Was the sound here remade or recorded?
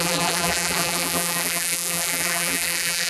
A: remade